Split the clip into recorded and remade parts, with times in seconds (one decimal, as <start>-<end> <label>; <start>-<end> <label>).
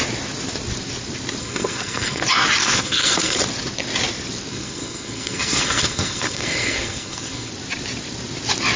0.0-1.4 recorded; 1.4-2.2 remade; 2.2-2.6 recorded; 2.6-3.4 remade; 3.4-4.5 recorded; 4.5-7.5 remade; 7.5-8.8 recorded